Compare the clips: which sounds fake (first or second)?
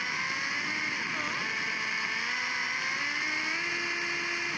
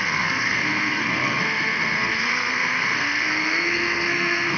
second